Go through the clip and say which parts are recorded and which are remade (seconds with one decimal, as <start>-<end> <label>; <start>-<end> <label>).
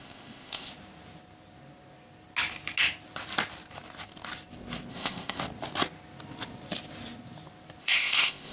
0.0-0.7 remade; 0.7-4.9 recorded; 4.9-5.4 remade; 5.4-7.8 recorded; 7.8-8.5 remade